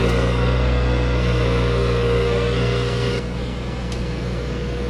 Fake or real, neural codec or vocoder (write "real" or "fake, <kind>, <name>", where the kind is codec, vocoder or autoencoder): fake, codec, SNAC